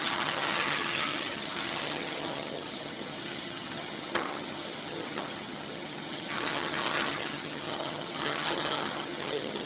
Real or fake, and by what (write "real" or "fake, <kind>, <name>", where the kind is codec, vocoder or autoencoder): fake, vocoder, HiFi-GAN